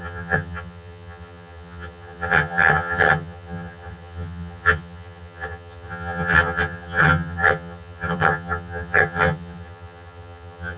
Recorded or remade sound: remade